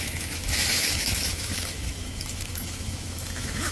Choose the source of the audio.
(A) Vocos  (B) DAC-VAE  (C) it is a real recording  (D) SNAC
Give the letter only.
B